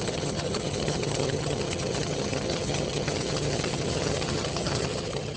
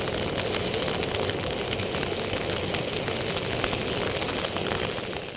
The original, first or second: second